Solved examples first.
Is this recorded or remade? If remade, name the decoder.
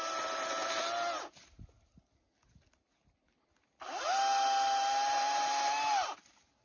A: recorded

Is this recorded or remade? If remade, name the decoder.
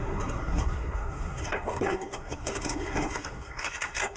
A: remade, codec, SNAC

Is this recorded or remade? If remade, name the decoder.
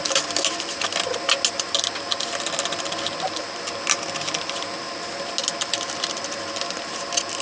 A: recorded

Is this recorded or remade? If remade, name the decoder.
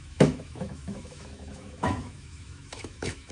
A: remade, autoencoder, DAC-VAE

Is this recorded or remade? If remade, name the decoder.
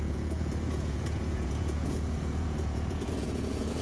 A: remade, vocoder, Vocos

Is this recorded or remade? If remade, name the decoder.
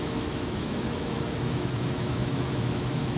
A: remade, autoencoder, DAC-VAE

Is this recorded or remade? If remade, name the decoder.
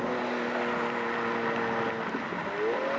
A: recorded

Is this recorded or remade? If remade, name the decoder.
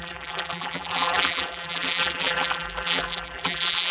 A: remade, vocoder, BigVGAN v2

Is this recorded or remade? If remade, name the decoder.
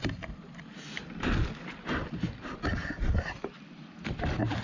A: recorded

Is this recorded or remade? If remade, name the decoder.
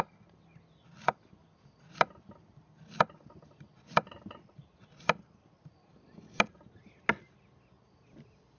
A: recorded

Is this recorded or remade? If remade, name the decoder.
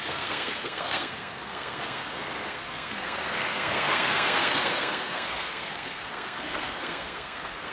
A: remade, codec, SNAC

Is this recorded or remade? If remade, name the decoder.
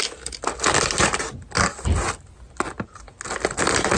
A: recorded